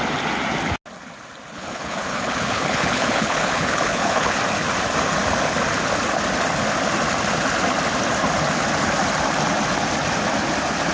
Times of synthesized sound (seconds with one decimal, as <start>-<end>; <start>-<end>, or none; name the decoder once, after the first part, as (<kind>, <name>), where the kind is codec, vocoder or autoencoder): 1.5-4.4 (codec, HILCodec)